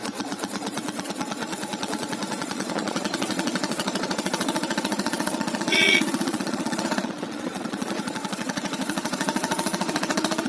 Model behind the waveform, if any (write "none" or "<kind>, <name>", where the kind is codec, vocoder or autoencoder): vocoder, Vocos